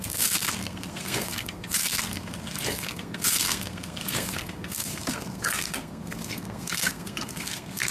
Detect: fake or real fake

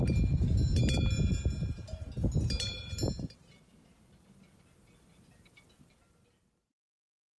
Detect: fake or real real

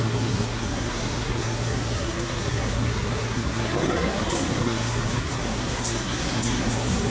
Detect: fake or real fake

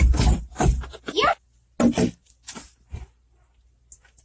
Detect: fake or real real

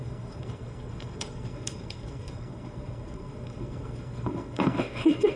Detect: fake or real fake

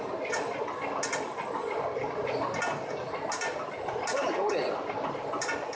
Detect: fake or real real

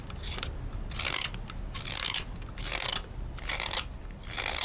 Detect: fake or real real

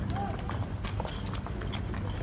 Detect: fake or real real